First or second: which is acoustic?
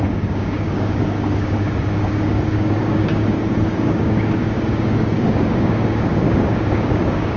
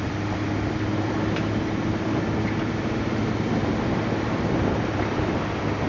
second